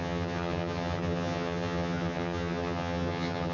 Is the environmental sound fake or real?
fake